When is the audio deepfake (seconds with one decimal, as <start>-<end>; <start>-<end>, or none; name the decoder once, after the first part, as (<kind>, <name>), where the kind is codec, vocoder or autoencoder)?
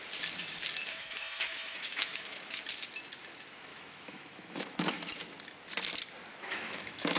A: 0.9-2.6 (autoencoder, DAC-VAE); 3.7-4.9; 6.3-7.2